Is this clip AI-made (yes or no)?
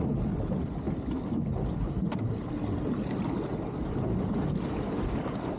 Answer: no